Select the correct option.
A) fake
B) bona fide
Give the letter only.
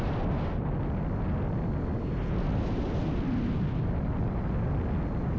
B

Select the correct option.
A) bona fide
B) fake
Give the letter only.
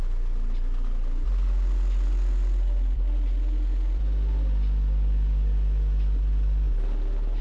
A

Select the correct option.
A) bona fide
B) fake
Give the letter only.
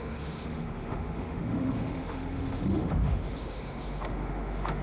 B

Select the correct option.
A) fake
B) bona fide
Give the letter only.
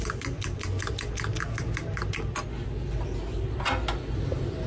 B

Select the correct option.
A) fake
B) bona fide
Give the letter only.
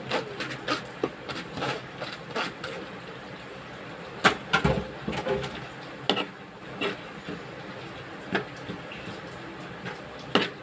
B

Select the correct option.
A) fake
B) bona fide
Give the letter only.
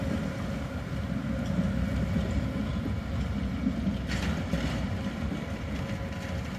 B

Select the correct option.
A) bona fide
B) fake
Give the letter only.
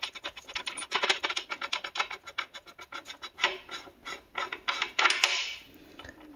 A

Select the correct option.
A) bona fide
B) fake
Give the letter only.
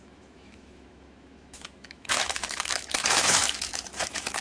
B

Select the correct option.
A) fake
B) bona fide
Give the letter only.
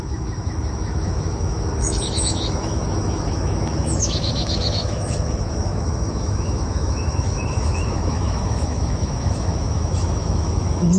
A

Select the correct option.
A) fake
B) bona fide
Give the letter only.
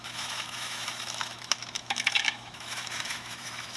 A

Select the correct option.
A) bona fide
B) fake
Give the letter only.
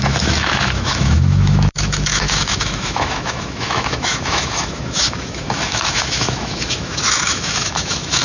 B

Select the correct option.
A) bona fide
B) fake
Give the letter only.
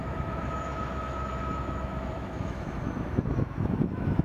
B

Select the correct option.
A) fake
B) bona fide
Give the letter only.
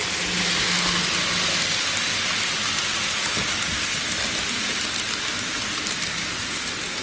B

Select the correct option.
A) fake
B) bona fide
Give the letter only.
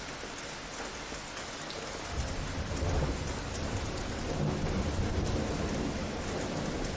B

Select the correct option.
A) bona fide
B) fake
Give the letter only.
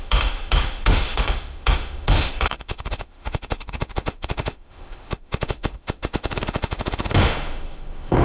B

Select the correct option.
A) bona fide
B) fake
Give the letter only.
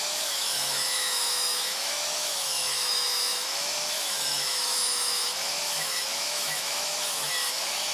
B